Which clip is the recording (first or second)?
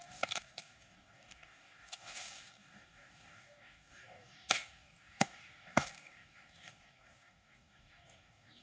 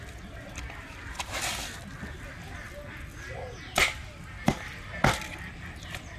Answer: second